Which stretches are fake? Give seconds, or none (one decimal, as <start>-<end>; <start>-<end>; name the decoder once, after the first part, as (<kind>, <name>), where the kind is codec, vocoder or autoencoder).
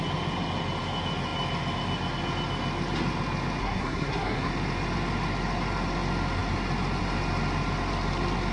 3.6-4.5 (codec, SNAC)